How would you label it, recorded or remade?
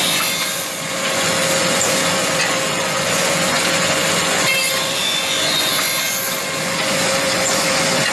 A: remade